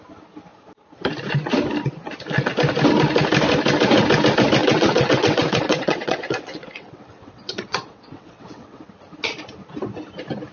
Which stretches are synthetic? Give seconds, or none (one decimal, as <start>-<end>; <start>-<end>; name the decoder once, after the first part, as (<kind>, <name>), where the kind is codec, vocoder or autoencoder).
4.6-8.8 (vocoder, WaveNeXt)